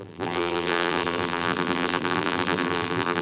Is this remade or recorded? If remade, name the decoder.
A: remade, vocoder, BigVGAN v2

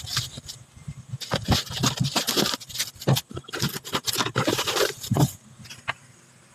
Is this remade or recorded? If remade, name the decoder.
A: recorded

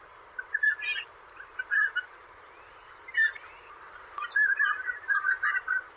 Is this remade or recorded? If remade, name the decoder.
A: remade, vocoder, BigVGAN v2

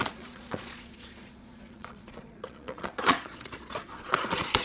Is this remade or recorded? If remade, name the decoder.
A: remade, vocoder, Vocos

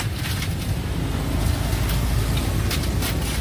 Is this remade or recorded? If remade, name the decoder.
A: recorded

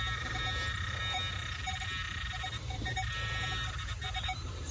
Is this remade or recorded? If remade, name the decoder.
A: remade, vocoder, BigVGAN v2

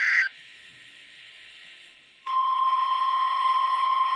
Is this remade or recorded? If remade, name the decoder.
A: remade, codec, HILCodec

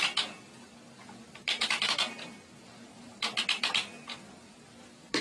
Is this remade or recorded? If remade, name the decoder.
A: recorded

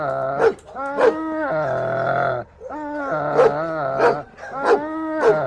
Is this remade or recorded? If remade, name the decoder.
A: recorded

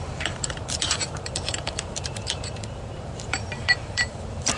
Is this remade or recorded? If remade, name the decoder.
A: remade, vocoder, BigVGAN v2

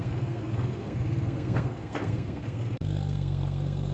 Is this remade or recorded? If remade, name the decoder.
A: remade, codec, SNAC